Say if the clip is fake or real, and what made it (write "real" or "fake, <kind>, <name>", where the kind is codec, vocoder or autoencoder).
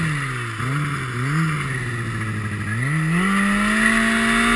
real